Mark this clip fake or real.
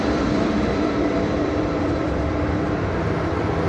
fake